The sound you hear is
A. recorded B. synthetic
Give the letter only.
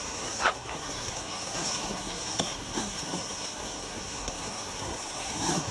B